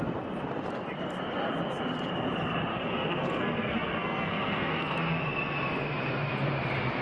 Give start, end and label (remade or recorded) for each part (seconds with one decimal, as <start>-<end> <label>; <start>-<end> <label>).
0.0-2.7 recorded; 2.7-5.2 remade; 5.2-7.0 recorded